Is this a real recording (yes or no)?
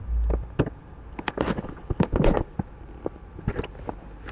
yes